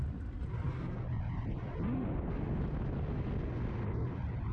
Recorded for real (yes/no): yes